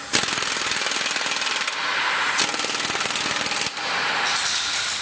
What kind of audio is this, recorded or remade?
recorded